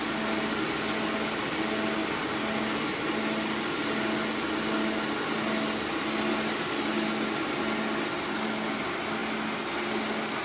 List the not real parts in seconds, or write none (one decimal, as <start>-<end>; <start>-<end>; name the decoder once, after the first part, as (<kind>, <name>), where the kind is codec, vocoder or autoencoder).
none